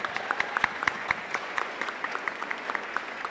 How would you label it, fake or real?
fake